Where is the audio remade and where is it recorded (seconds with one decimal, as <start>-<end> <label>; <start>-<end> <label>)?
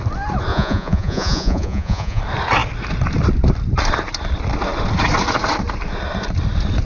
0.0-0.5 recorded; 0.5-2.2 remade; 2.2-6.8 recorded